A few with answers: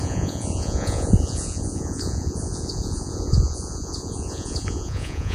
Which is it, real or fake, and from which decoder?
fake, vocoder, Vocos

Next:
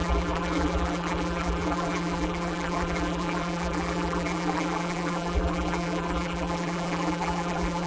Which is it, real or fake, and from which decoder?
fake, vocoder, BigVGAN v2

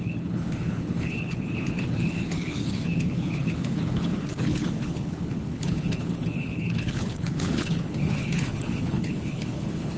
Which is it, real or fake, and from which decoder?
fake, codec, HILCodec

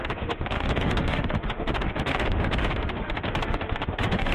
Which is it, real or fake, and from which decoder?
fake, autoencoder, DAC-VAE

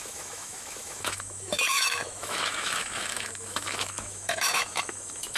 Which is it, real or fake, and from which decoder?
fake, autoencoder, DAC-VAE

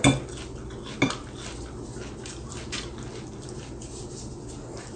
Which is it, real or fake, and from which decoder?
real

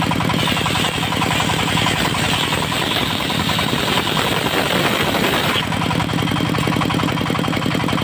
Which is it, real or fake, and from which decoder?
real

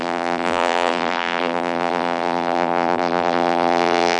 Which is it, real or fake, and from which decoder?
fake, vocoder, BigVGAN v2